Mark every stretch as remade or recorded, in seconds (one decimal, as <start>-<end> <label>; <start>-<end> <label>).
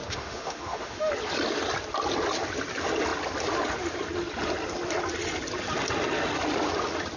0.0-1.1 remade; 1.1-7.2 recorded